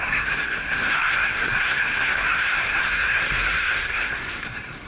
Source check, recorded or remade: remade